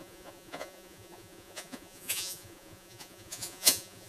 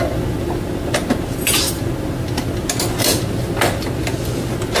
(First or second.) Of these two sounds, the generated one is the first